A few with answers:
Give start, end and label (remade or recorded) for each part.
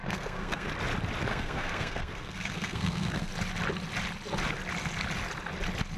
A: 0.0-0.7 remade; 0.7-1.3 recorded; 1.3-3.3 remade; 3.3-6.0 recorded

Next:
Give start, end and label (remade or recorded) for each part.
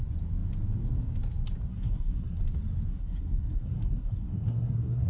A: 0.0-1.7 recorded; 1.7-2.4 remade; 2.4-2.9 recorded; 2.9-5.1 remade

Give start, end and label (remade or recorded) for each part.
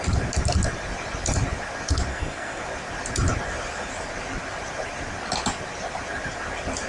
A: 0.0-2.1 recorded; 2.1-2.6 remade; 2.6-6.9 recorded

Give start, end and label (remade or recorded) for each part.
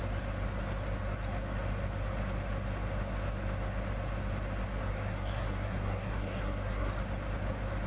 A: 0.0-4.9 recorded; 4.9-6.9 remade; 6.9-7.9 recorded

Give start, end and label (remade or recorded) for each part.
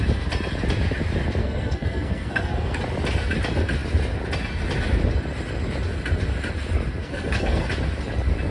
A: 0.0-1.4 recorded; 1.4-2.8 remade; 2.8-7.0 recorded; 7.0-7.7 remade; 7.7-8.5 recorded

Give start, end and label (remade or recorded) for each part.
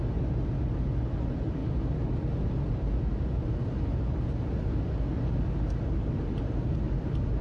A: 0.0-7.4 recorded